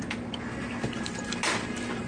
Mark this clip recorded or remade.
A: recorded